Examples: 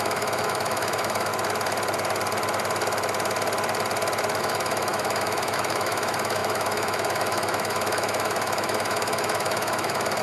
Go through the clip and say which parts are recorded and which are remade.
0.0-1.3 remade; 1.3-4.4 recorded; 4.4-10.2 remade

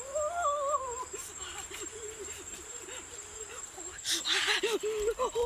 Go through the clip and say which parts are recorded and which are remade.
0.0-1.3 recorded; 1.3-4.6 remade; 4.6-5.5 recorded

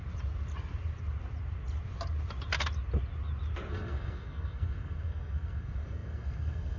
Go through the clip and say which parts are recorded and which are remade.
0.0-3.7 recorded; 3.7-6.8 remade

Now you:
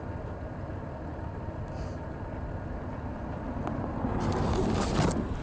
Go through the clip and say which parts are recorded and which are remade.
0.0-5.4 recorded

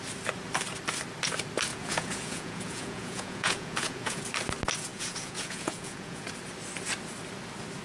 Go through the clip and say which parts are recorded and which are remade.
0.0-1.7 recorded; 1.7-4.2 remade; 4.2-4.9 recorded; 4.9-6.3 remade; 6.3-7.8 recorded

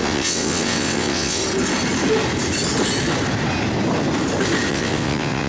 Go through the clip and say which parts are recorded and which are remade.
0.0-1.4 remade; 1.4-4.7 recorded; 4.7-5.5 remade

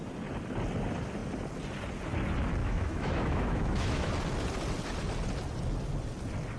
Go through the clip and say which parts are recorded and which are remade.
0.0-2.6 recorded; 2.6-4.1 remade; 4.1-6.6 recorded